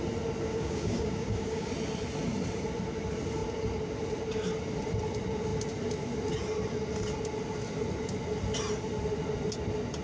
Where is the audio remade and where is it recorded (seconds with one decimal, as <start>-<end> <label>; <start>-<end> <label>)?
0.0-0.5 recorded; 0.5-1.7 remade; 1.7-10.0 recorded